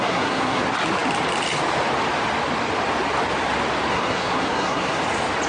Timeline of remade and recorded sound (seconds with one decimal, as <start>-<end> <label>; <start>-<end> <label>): 0.0-0.6 remade; 0.6-3.9 recorded; 3.9-5.0 remade; 5.0-5.5 recorded